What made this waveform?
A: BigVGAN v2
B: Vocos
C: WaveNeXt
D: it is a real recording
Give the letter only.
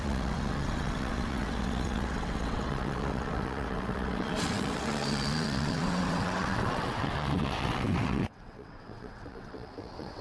C